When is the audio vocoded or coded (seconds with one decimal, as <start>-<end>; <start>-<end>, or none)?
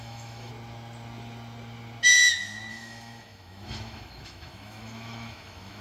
0.0-0.5; 2.7-5.8